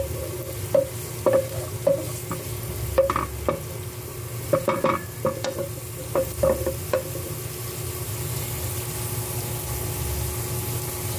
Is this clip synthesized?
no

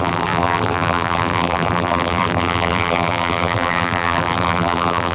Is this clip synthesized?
yes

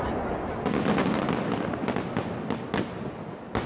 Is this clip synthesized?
no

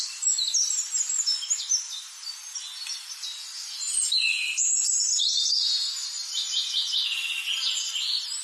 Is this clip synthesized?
no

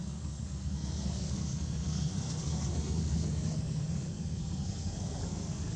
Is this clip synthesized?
yes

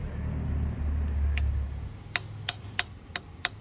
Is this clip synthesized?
no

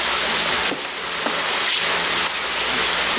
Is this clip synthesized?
no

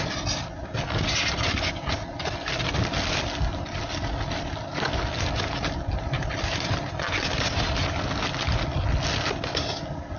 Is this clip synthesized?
no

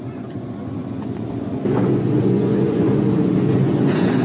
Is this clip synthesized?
yes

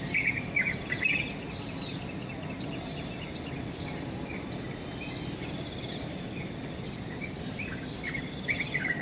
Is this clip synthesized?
no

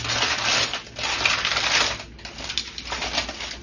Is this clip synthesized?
no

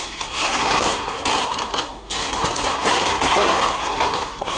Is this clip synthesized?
yes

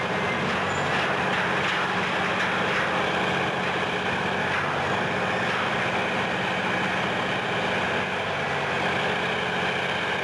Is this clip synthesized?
no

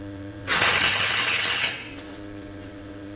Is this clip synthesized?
yes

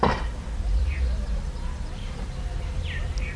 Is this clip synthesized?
yes